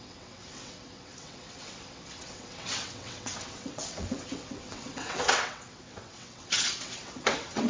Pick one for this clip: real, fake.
fake